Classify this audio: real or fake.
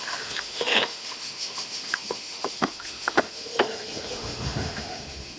fake